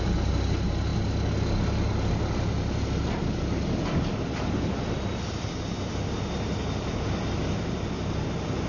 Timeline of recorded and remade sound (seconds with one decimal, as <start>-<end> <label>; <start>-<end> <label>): 0.0-8.7 recorded